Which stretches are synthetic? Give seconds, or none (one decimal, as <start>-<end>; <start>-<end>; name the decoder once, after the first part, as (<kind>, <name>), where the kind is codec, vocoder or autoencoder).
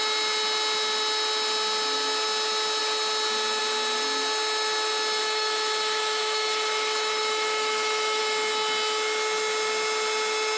5.2-8.2 (autoencoder, DAC-VAE)